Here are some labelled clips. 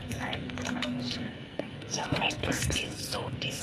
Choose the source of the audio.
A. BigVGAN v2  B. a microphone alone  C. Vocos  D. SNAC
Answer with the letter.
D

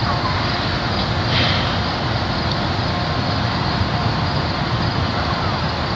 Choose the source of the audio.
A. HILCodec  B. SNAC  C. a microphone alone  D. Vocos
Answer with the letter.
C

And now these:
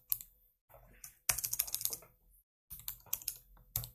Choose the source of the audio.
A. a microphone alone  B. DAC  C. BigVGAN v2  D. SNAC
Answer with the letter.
A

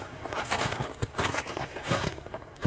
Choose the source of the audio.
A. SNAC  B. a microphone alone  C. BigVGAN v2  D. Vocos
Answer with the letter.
A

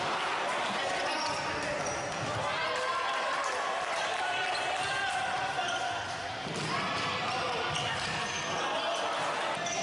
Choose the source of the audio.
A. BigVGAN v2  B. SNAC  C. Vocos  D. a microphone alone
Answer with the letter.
D